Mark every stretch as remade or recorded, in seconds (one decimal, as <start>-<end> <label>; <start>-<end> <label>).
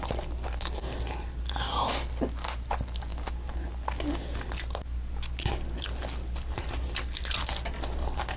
0.0-8.4 recorded